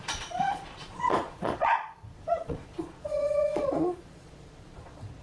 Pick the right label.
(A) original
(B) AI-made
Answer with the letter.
B